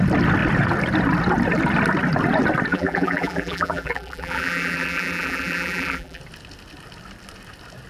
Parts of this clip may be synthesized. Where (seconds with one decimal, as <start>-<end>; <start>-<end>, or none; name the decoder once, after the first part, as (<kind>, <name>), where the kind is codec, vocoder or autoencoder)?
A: 2.7-6.2 (vocoder, BigVGAN v2)